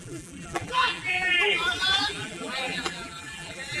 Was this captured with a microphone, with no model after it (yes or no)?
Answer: no